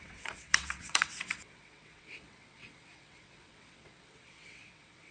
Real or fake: fake